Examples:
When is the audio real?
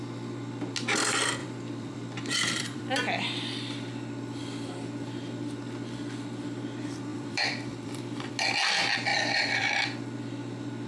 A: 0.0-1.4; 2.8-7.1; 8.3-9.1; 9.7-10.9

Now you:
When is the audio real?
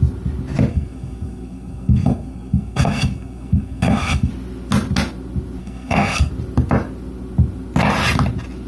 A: 0.0-0.7; 4.3-5.6; 6.3-8.7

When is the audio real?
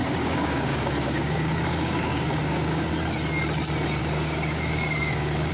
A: 2.9-4.0